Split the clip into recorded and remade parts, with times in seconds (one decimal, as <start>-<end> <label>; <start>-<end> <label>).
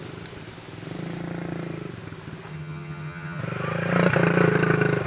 0.0-2.5 recorded; 2.5-3.4 remade; 3.4-5.1 recorded